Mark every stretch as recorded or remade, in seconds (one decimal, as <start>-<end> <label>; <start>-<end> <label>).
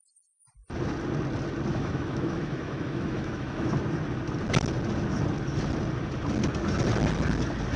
0.0-1.7 recorded; 1.7-3.7 remade; 3.7-7.8 recorded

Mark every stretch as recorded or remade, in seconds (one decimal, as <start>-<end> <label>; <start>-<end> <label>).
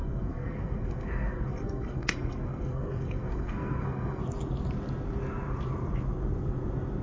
0.0-4.2 remade; 4.2-7.0 recorded